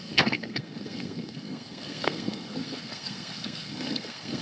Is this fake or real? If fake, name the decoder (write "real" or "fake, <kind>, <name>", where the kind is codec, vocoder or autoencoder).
fake, codec, SNAC